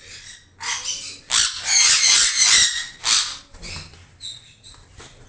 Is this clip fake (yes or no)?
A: no